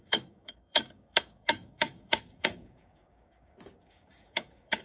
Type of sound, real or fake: fake